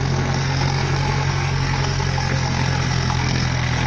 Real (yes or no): no